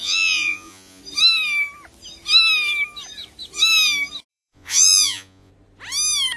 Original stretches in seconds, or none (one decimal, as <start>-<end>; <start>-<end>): 1.0-4.3; 5.5-6.4